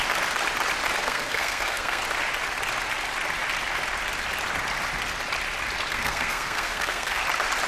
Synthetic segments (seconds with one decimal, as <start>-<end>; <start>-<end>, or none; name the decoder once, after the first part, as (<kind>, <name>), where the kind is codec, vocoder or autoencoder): 1.0-2.0 (codec, SNAC); 5.9-7.2